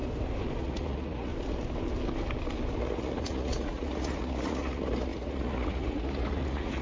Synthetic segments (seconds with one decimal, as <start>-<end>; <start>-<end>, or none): 0.6-1.3; 2.8-6.8